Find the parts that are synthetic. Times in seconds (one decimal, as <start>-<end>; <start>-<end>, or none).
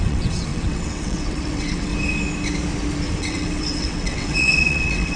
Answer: 0.0-1.9; 3.2-5.2